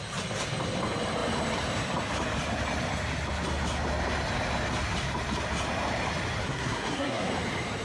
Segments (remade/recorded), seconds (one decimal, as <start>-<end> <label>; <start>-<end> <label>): 0.0-6.4 recorded; 6.4-7.3 remade; 7.3-7.8 recorded